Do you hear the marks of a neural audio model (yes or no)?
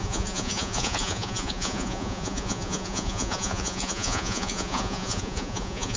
yes